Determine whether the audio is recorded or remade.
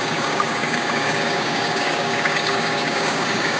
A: remade